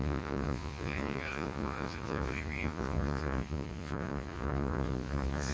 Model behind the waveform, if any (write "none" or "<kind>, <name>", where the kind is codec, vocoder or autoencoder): vocoder, Vocos